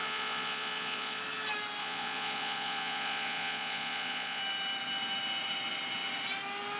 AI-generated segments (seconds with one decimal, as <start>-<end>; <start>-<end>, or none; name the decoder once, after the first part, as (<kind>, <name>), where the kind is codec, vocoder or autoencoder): 0.0-1.2 (vocoder, Vocos); 1.8-4.4